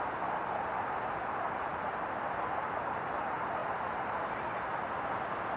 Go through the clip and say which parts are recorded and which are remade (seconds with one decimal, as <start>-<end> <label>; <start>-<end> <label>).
0.0-5.6 recorded

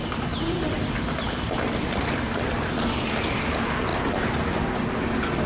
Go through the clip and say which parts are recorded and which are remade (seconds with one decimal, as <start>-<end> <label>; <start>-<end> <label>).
0.0-5.5 recorded

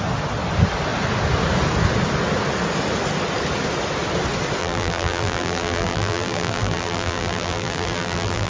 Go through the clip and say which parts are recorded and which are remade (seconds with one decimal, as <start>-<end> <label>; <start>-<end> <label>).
0.0-4.6 recorded; 4.6-8.5 remade

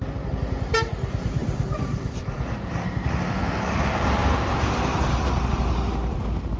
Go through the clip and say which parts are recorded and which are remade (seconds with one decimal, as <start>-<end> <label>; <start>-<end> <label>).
0.0-1.4 recorded; 1.4-2.8 remade; 2.8-4.2 recorded; 4.2-5.4 remade; 5.4-6.6 recorded

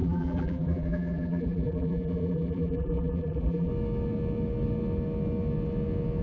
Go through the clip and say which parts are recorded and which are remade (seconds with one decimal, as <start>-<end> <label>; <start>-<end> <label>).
0.0-3.7 remade; 3.7-6.2 recorded

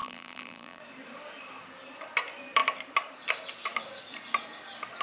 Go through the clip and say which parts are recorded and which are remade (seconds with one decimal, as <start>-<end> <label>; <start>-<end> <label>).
0.0-0.8 remade; 0.8-5.0 recorded

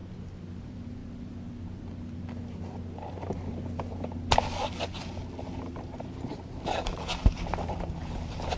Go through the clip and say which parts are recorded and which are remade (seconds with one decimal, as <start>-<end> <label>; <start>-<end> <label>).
0.0-0.6 recorded; 0.6-1.0 remade; 1.0-5.6 recorded; 5.6-8.6 remade